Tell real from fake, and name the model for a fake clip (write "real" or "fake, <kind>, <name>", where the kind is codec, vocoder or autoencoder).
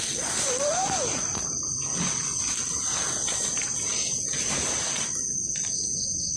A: real